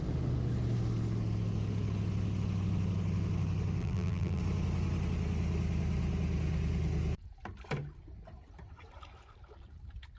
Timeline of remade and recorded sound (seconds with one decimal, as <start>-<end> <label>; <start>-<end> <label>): 0.0-3.8 recorded; 3.8-4.4 remade; 4.4-10.2 recorded